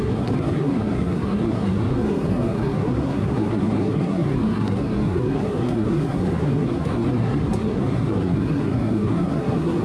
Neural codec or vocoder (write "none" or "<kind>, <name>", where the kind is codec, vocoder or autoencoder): codec, SNAC